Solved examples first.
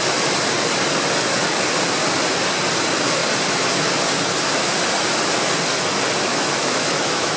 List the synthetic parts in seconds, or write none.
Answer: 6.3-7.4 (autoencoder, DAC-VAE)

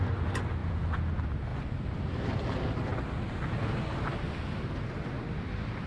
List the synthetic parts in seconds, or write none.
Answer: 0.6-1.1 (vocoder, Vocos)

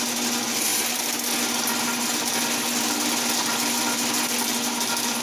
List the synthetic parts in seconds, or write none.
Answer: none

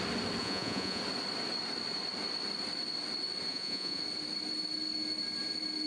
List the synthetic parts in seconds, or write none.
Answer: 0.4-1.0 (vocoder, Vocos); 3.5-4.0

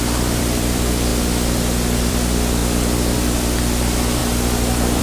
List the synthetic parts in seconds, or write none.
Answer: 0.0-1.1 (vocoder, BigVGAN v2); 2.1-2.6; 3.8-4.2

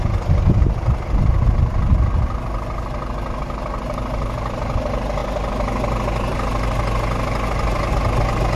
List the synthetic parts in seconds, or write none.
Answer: none